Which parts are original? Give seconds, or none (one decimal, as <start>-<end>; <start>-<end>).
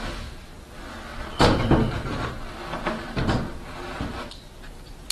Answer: 0.0-5.1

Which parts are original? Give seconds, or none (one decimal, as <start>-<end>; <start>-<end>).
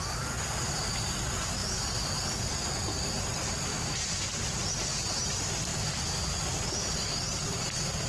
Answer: 0.0-3.7; 4.3-5.7; 6.3-8.1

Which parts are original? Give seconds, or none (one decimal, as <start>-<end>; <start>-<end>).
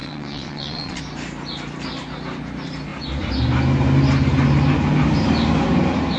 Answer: 1.0-6.2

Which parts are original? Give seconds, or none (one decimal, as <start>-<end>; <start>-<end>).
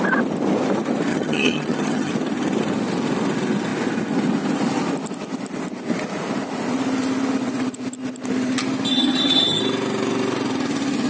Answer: 0.0-1.1; 2.1-8.9; 9.6-11.1